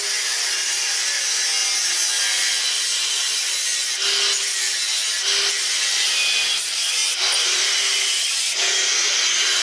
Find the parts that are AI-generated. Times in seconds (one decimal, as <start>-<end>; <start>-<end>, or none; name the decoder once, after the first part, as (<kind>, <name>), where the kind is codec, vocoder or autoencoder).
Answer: none